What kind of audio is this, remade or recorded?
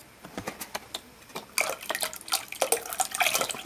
recorded